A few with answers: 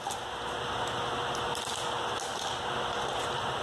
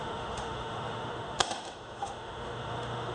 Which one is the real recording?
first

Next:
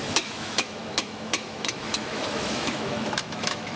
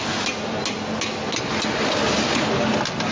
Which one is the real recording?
second